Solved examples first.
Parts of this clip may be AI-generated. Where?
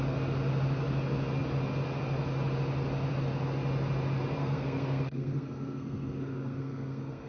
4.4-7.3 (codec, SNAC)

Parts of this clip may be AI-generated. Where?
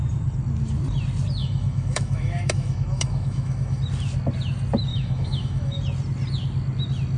1.4-3.8 (autoencoder, DAC-VAE); 4.9-5.8